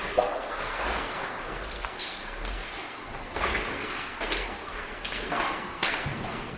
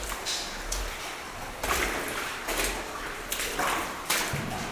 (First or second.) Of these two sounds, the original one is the second